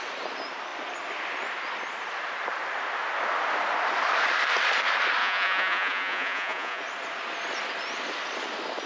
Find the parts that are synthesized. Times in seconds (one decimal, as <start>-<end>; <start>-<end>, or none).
5.2-6.8